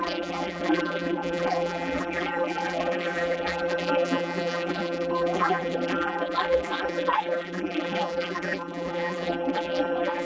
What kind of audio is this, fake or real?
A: fake